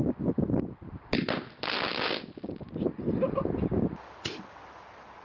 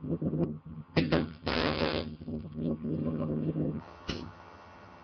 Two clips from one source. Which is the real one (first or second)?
first